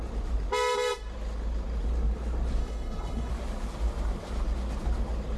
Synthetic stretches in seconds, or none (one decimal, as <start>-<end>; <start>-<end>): 2.6-3.3